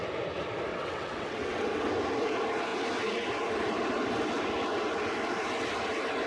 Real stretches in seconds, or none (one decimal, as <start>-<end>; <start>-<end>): 0.0-0.7; 1.9-6.3